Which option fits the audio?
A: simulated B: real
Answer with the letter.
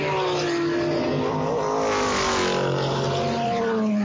B